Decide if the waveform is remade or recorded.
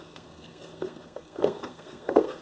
remade